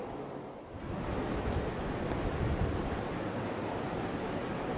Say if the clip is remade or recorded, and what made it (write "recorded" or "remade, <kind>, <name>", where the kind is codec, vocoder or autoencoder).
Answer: recorded